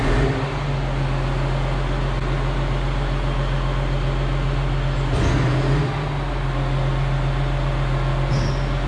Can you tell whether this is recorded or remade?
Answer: recorded